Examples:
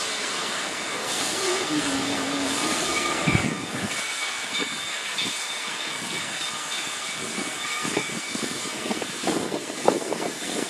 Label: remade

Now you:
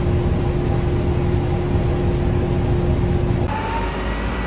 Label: recorded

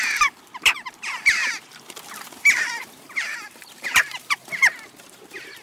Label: remade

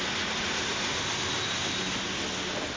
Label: recorded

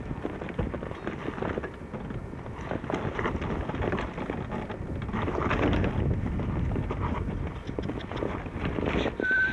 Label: recorded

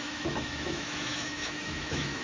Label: remade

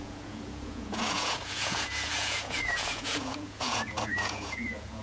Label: remade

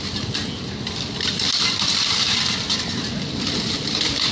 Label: recorded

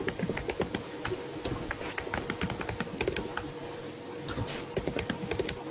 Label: recorded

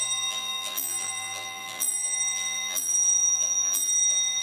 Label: remade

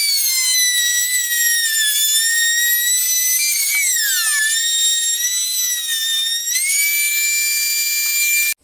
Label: recorded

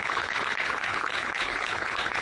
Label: remade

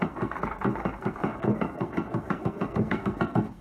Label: remade